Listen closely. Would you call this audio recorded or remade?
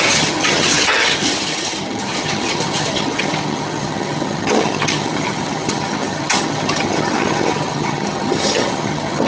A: remade